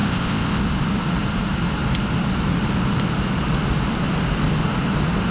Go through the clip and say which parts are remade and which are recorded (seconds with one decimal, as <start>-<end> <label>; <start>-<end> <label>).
0.0-0.6 remade; 0.6-5.3 recorded